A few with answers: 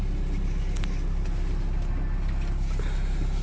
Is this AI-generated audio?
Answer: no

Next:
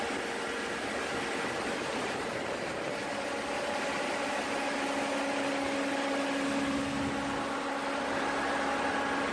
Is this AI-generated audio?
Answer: no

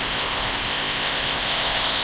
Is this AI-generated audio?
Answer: yes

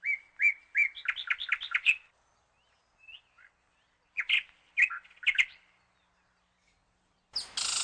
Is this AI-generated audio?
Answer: no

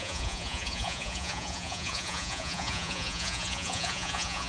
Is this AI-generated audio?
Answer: yes